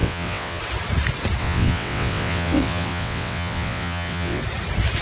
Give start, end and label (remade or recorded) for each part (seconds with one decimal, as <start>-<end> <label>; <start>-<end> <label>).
0.0-0.6 remade; 0.6-1.4 recorded; 1.4-4.4 remade; 4.4-5.0 recorded